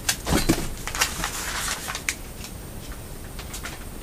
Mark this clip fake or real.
real